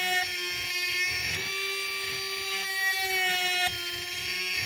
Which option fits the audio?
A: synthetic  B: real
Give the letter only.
B